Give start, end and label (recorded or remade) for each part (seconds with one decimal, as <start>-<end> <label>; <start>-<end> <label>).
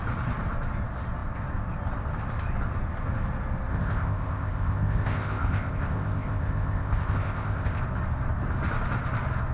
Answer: 0.0-3.7 recorded; 3.7-7.8 remade; 7.8-9.5 recorded